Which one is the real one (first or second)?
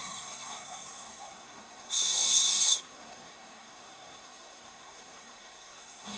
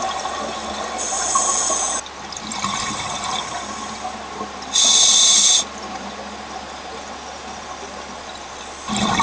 second